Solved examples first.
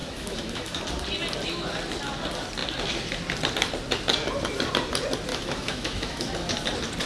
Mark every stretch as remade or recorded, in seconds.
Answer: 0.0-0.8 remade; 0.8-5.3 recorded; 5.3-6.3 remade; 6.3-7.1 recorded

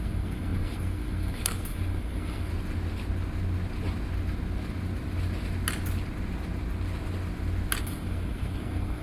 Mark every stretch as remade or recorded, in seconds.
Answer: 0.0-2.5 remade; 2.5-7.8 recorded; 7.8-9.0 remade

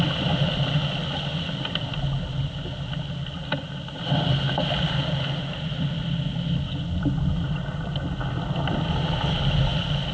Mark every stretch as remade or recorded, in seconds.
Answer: 0.0-10.1 recorded

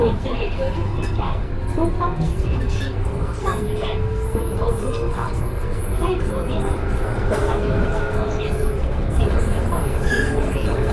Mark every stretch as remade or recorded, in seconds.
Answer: 0.0-1.5 remade; 1.5-2.0 recorded; 2.0-10.9 remade

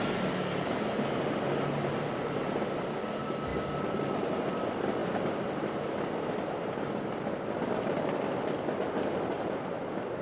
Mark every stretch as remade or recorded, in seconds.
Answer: 0.0-10.2 recorded

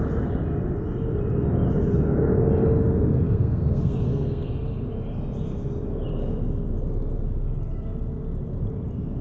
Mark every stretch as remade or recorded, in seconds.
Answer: 0.0-3.1 recorded; 3.1-4.5 remade; 4.5-9.2 recorded